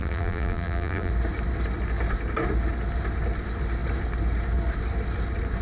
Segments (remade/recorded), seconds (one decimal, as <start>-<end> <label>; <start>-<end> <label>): 0.0-1.1 remade; 1.1-5.6 recorded